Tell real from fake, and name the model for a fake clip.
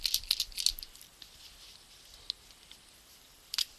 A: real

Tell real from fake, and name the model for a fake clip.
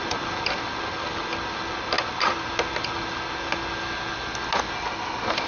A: real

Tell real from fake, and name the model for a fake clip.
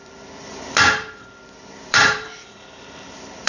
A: fake, vocoder, BigVGAN v2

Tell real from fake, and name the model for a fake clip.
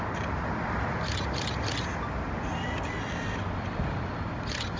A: real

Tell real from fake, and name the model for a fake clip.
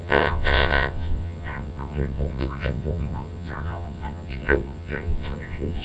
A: fake, vocoder, WaveNeXt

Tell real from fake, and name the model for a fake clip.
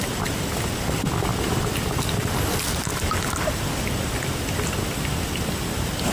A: real